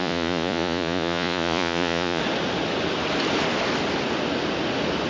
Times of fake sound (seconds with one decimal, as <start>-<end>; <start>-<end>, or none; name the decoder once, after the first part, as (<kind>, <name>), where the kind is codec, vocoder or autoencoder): 0.0-2.2 (vocoder, Vocos)